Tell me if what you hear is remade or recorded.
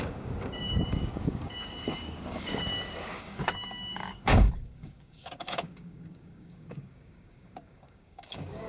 remade